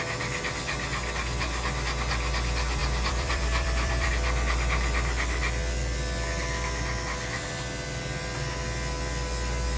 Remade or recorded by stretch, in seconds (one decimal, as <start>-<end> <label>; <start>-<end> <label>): 0.0-2.8 recorded; 2.8-4.1 remade; 4.1-9.8 recorded